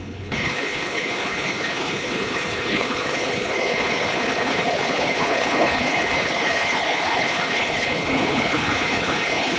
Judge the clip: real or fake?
fake